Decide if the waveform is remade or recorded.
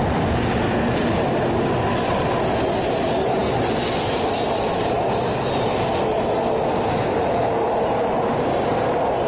recorded